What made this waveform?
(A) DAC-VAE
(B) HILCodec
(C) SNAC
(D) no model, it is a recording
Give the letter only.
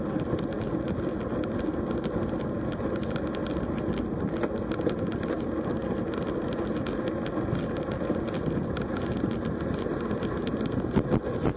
D